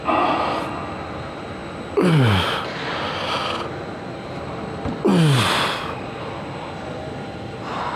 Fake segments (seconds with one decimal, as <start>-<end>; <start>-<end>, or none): none